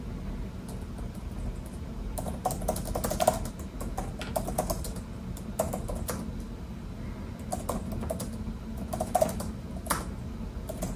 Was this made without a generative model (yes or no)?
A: yes